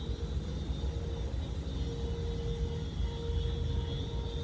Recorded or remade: recorded